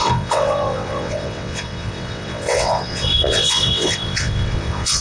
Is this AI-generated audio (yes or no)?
yes